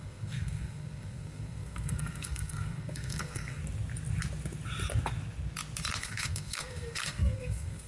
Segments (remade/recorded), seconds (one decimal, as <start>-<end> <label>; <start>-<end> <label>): 0.0-3.6 remade; 3.6-6.0 recorded; 6.0-7.9 remade